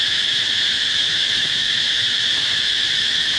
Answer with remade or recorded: remade